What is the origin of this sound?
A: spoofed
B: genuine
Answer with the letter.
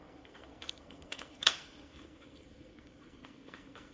A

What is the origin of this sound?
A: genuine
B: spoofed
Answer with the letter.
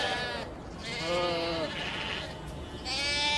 A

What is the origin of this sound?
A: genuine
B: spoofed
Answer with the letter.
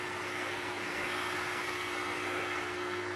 B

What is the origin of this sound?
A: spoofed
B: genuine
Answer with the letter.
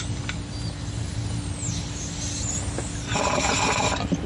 B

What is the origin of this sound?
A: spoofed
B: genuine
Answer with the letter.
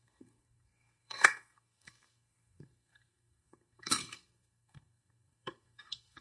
A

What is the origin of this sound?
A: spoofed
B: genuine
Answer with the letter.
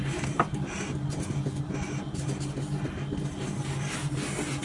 B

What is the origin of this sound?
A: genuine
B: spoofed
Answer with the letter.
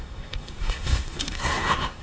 B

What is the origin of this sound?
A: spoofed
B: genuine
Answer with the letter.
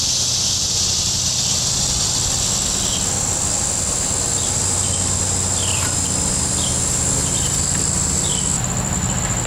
B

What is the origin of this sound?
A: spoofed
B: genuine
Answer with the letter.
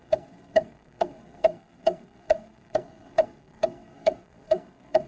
A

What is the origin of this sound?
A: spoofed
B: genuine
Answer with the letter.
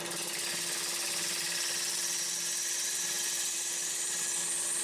B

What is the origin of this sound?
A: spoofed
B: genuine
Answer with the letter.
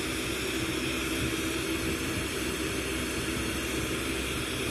B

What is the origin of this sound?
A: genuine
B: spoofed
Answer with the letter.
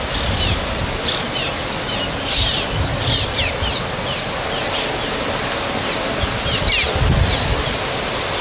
A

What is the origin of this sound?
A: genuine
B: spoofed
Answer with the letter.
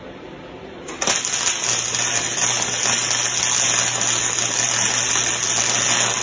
A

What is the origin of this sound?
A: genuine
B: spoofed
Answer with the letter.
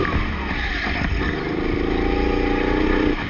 A